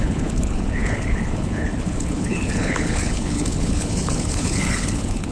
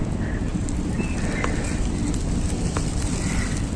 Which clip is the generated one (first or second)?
first